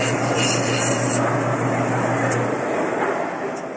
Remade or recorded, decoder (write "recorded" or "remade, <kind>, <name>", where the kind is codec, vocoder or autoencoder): recorded